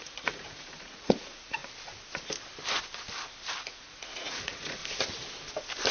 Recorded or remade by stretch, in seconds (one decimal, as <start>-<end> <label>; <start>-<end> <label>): 0.0-1.6 remade; 1.6-3.6 recorded; 3.6-4.8 remade; 4.8-5.9 recorded